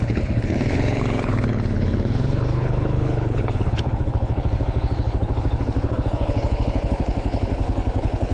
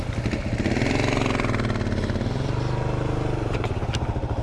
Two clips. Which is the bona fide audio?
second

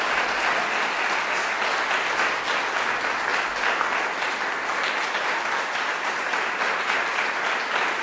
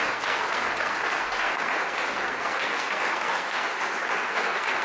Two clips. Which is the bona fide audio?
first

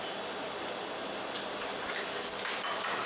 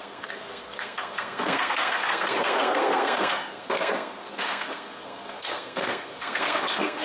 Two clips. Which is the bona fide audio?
first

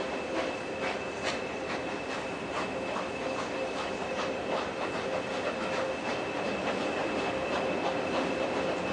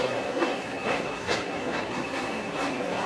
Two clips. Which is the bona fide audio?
first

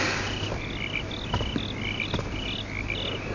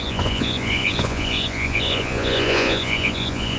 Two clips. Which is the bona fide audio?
first